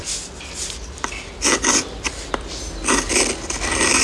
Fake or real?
real